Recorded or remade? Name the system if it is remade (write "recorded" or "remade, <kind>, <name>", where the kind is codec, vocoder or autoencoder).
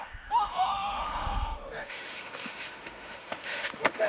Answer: remade, autoencoder, DAC-VAE